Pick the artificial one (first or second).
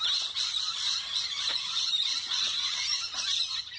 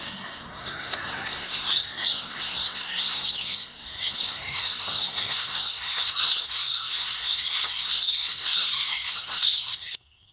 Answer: second